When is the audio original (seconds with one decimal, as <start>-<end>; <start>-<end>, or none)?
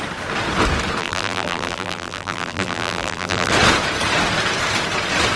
0.0-1.0; 3.5-5.4